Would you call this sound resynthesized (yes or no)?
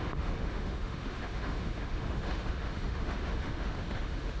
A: yes